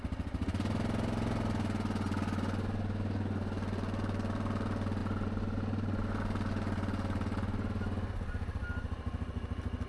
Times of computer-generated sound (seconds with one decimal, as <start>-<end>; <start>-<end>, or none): none